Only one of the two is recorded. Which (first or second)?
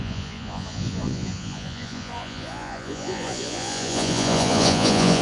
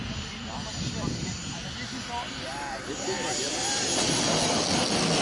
second